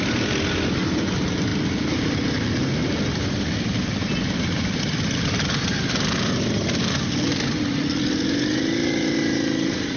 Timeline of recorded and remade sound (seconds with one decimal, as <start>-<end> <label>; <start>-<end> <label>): 0.0-10.0 recorded